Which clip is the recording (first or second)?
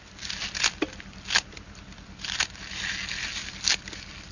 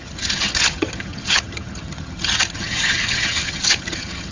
first